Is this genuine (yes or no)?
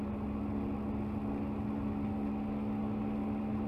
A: yes